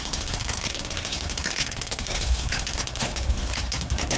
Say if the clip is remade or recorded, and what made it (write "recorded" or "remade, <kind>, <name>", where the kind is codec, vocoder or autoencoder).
remade, codec, SNAC